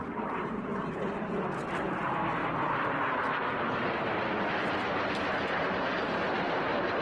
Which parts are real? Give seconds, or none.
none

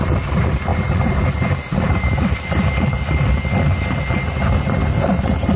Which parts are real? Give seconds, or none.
0.0-5.6

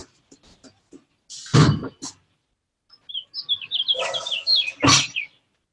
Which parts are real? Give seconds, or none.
0.0-5.7

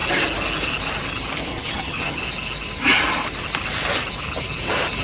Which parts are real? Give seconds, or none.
0.0-1.5; 2.2-5.0

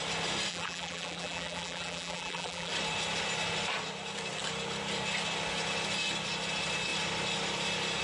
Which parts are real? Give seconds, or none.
0.0-0.5; 2.7-8.0

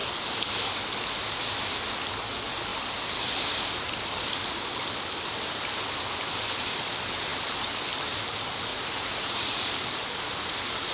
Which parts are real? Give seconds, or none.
0.0-8.7; 9.7-10.9